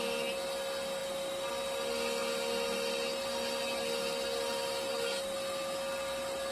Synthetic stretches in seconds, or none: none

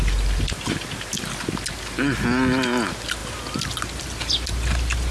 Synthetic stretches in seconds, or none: none

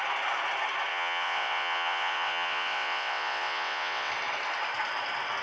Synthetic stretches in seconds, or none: 0.9-4.1

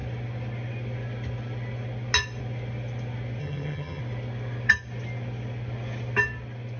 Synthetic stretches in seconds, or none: 3.4-4.0

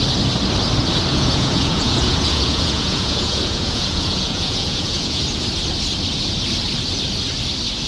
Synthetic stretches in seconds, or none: 1.1-5.2

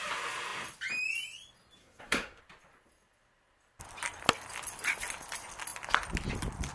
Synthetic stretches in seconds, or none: 1.8-2.4